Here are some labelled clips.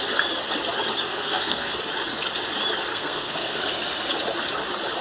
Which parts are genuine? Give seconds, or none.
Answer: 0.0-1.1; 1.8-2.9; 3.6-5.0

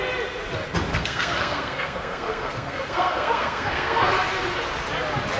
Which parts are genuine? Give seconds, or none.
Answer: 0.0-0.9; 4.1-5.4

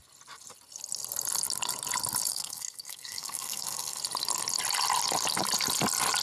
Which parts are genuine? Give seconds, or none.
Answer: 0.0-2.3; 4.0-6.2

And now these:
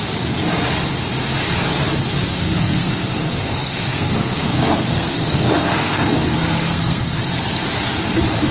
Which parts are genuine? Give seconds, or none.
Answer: 0.0-2.3; 7.2-8.5

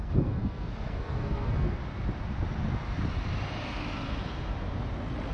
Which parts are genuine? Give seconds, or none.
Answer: 1.8-5.3

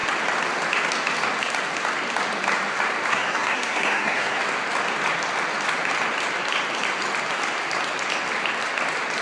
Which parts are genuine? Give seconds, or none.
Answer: 0.0-3.1; 4.4-9.2

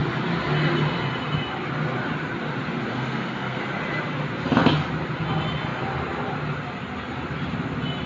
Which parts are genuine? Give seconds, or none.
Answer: 0.0-2.9; 3.6-8.1